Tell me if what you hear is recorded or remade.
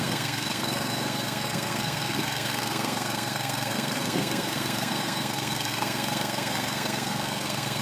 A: remade